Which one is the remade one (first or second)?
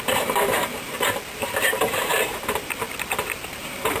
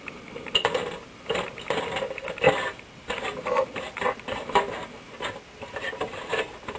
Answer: first